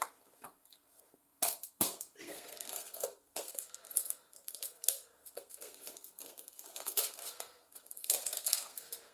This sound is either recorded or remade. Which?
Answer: remade